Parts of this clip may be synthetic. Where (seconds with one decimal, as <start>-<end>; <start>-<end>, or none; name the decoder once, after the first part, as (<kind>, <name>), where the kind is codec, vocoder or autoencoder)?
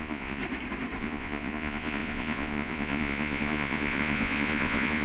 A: 0.0-0.4 (vocoder, Vocos); 1.0-5.0